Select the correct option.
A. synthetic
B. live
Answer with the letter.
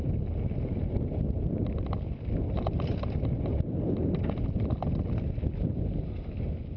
B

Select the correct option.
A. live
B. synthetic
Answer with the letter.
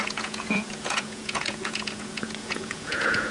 B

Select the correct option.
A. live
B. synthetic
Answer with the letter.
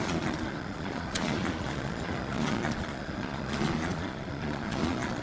B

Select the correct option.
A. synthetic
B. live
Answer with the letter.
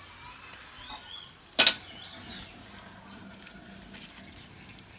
B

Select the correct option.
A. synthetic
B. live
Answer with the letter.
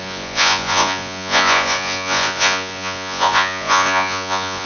A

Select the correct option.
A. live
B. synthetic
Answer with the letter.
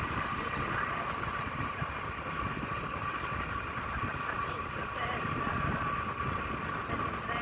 A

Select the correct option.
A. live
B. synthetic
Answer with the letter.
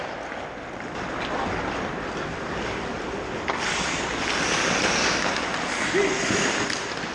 A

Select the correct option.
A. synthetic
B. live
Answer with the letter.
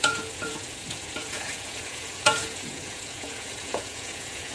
A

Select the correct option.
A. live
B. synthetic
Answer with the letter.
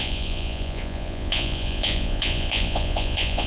B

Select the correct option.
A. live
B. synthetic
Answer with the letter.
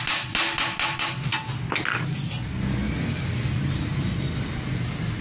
A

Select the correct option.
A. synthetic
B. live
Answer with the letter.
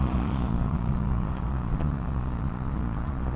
A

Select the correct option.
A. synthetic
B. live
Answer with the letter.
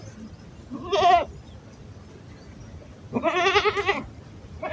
B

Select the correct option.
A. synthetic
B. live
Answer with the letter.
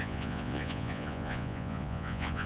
A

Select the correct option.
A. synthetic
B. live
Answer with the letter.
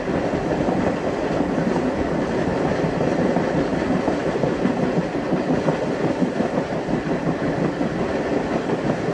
B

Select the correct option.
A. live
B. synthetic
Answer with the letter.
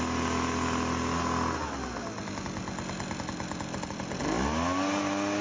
A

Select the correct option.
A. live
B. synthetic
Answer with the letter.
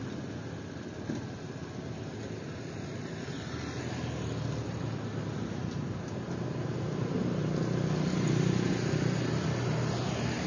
A